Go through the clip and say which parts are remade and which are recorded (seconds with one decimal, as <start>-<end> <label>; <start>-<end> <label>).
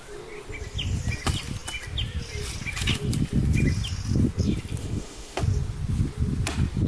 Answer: 0.0-4.8 recorded; 4.8-5.4 remade; 5.4-6.9 recorded